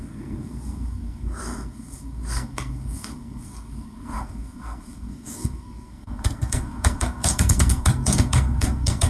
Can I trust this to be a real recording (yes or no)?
no